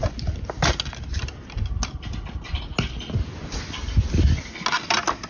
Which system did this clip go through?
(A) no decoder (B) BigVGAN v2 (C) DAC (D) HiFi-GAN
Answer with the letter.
A